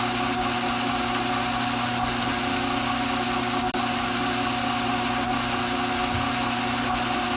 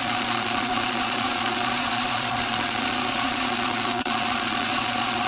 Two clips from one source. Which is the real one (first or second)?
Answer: first